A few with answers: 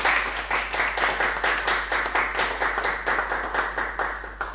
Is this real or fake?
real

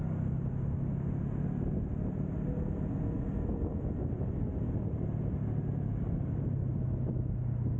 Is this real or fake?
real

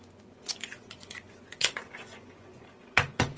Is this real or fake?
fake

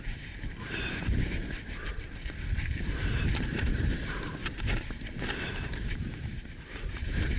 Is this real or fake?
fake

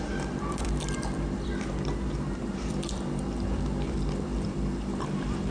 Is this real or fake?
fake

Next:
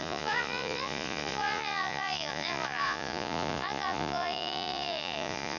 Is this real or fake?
fake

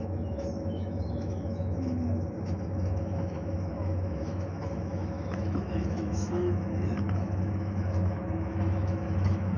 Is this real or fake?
fake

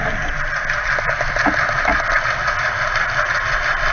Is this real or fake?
real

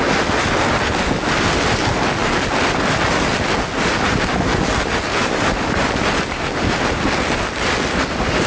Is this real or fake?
real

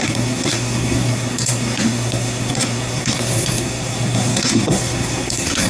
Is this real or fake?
fake